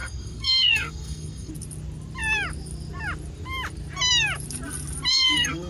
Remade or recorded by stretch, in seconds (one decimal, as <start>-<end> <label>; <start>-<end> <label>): 0.0-1.5 remade; 1.5-5.1 recorded; 5.1-5.7 remade